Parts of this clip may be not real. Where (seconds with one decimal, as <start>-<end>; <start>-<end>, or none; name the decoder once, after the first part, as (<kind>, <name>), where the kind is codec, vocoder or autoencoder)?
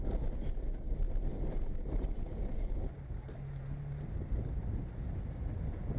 0.0-1.3 (vocoder, BigVGAN v2); 4.9-6.0